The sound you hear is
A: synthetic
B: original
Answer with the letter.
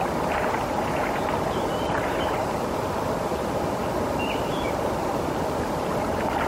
B